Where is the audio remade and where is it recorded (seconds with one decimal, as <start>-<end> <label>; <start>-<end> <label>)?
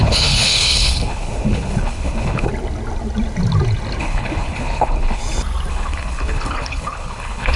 0.0-2.5 remade; 2.5-4.0 recorded; 4.0-5.2 remade; 5.2-5.7 recorded; 5.7-7.6 remade